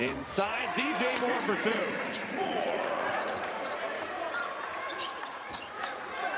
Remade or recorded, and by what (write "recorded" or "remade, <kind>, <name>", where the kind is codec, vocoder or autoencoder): remade, vocoder, Vocos